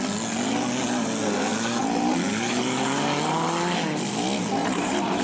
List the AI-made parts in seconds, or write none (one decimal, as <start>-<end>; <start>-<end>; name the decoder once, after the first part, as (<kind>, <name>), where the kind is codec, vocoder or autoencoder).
4.6-5.2 (vocoder, BigVGAN v2)